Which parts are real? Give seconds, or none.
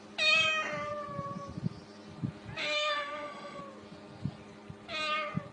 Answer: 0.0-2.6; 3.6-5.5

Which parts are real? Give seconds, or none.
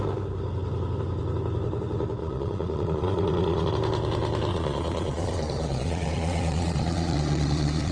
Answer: 0.0-2.2; 3.7-4.5